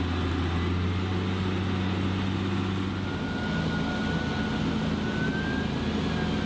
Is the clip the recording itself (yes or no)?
yes